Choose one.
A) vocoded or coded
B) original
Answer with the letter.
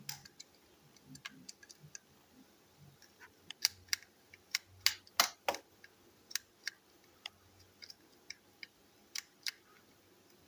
B